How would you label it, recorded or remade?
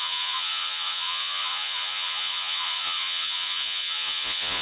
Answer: remade